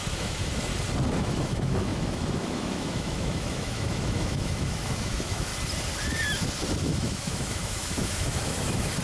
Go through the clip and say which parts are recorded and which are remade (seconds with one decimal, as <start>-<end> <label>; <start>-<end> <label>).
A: 0.0-0.7 remade; 0.7-1.2 recorded; 1.2-5.5 remade; 5.5-6.8 recorded; 6.8-9.0 remade